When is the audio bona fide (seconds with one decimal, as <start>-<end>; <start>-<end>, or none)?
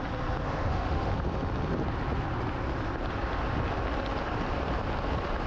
0.0-0.4; 1.1-5.5